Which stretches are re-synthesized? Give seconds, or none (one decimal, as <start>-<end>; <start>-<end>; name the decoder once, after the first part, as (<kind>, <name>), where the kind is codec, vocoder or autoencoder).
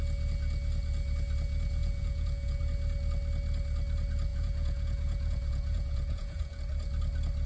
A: 1.8-2.6 (vocoder, Vocos); 4.3-6.6